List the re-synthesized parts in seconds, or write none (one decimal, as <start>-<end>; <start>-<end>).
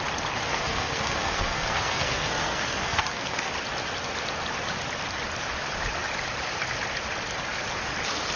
0.5-3.5